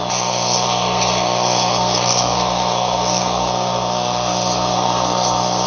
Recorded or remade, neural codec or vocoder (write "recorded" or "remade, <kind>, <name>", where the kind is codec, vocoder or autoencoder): remade, codec, SNAC